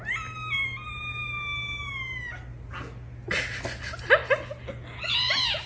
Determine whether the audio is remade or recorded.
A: recorded